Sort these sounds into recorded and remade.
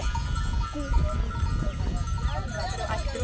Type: recorded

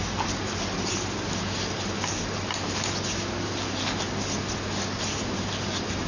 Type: recorded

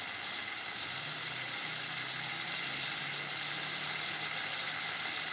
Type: recorded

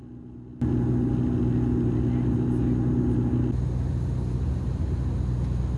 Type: recorded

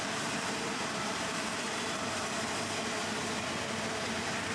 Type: remade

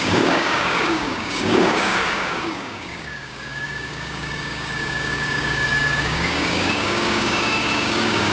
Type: remade